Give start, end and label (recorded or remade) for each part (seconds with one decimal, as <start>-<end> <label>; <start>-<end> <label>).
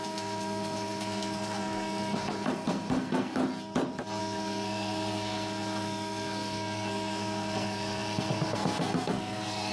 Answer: 0.0-3.4 remade; 3.4-4.2 recorded; 4.2-9.7 remade